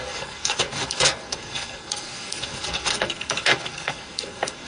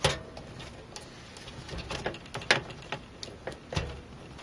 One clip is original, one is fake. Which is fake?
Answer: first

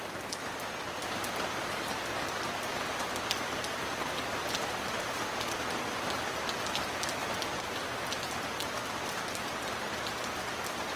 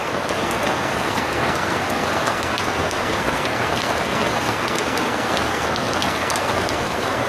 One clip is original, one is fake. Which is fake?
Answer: second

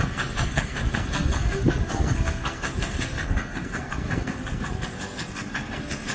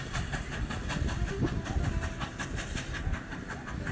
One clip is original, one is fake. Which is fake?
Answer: first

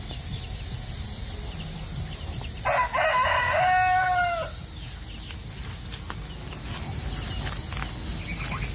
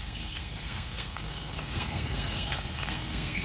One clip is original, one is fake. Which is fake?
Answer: second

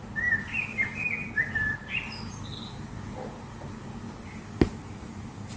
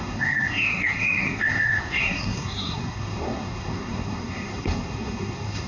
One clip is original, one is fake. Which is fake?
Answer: second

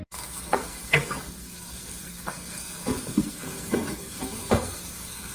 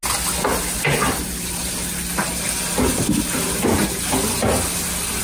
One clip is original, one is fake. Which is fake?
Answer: first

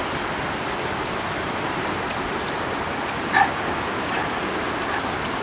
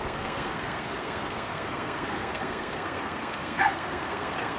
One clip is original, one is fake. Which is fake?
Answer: second